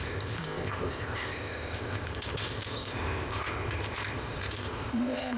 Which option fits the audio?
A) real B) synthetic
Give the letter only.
B